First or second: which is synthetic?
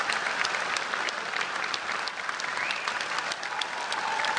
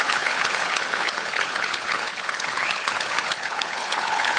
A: second